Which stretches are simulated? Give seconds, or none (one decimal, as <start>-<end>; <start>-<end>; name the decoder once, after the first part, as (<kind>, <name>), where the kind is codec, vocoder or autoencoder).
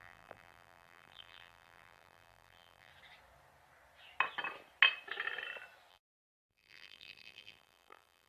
0.0-2.9 (vocoder, BigVGAN v2); 5.9-8.3